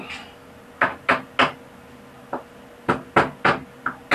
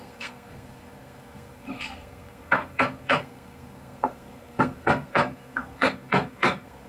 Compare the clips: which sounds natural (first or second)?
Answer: first